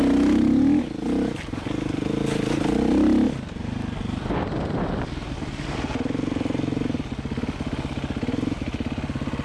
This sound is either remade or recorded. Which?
recorded